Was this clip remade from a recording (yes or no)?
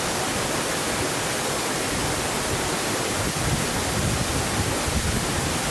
no